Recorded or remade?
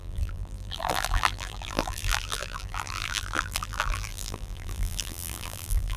remade